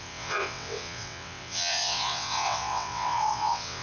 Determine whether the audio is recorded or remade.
remade